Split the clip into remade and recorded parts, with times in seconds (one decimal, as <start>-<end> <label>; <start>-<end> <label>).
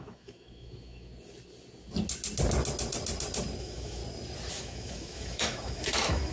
0.0-1.1 remade; 1.1-3.6 recorded; 3.6-4.0 remade; 4.0-4.5 recorded; 4.5-6.3 remade